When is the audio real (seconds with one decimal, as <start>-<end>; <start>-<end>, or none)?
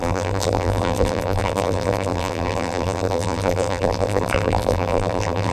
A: none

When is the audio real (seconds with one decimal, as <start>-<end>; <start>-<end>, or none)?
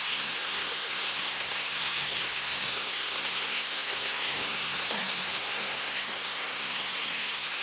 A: none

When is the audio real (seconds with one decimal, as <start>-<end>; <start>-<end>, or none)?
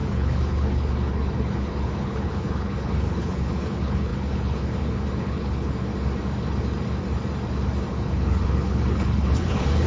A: 5.9-7.9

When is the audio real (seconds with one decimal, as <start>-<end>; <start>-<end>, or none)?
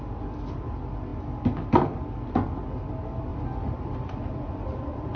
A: 0.0-3.3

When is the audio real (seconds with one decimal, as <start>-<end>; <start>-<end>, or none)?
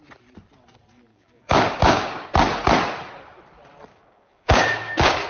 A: 0.0-1.1; 2.3-3.9